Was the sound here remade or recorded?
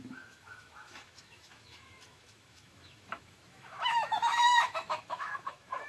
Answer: remade